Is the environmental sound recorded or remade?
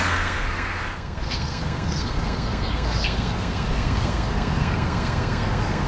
remade